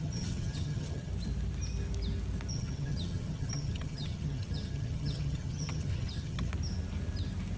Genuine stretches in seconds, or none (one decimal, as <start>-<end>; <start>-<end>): 1.1-2.5; 6.5-7.6

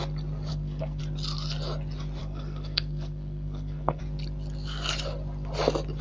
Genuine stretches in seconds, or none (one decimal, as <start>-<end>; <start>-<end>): 0.0-0.5; 1.0-2.2; 4.0-6.0

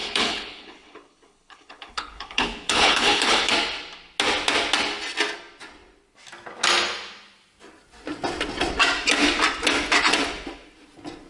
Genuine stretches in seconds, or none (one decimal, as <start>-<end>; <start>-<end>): 3.5-11.3

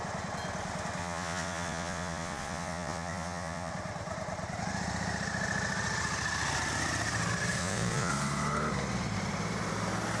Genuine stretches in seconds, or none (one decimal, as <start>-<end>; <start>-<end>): 0.0-1.0; 3.7-7.6; 8.1-10.2

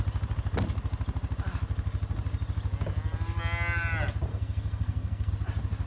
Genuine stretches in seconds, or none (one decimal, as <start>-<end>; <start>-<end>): 0.0-4.3; 5.3-5.9